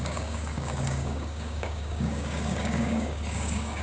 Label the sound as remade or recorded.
remade